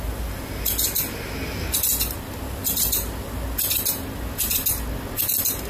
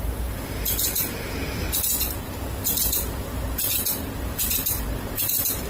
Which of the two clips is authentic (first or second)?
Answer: first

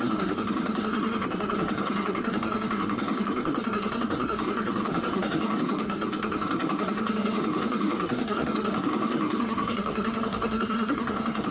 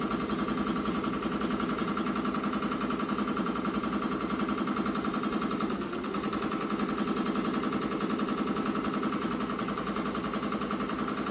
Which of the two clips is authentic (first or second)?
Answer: second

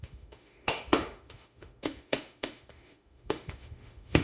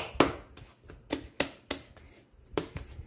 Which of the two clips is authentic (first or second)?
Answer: second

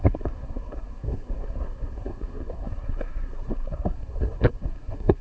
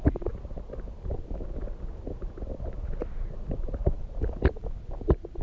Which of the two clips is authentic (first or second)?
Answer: second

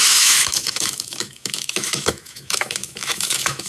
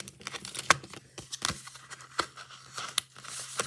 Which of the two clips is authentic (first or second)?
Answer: second